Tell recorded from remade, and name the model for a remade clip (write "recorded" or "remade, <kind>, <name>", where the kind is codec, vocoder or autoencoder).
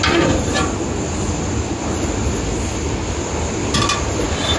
recorded